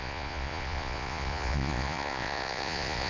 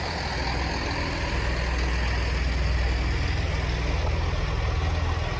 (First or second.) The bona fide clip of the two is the second